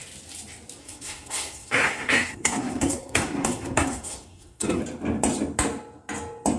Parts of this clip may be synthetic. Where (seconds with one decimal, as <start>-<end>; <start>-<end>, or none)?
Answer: 0.8-4.8